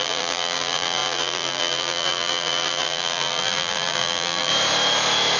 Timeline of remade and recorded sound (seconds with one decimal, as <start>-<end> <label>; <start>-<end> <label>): 0.0-4.5 remade; 4.5-5.4 recorded